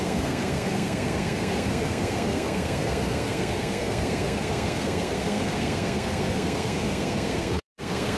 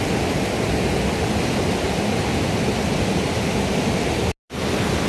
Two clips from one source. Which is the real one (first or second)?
second